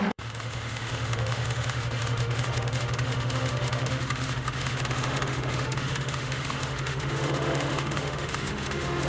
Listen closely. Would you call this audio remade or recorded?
remade